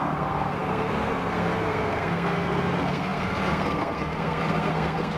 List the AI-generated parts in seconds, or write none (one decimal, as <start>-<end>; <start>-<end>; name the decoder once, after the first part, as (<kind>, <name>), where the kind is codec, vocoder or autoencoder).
0.0-5.2 (codec, SNAC)